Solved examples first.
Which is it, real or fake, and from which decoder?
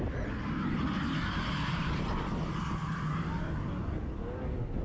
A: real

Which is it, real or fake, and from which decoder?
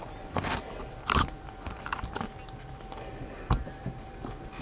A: fake, vocoder, BigVGAN v2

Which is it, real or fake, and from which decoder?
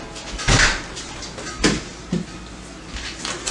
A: real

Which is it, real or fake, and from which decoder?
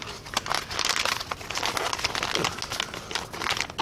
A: real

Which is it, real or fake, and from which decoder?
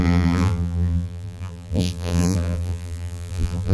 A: fake, vocoder, BigVGAN v2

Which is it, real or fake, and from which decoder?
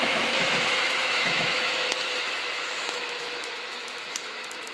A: fake, autoencoder, DAC-VAE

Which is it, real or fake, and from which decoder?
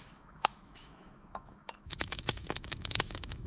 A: fake, autoencoder, DAC-VAE